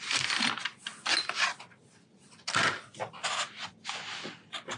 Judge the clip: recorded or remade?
recorded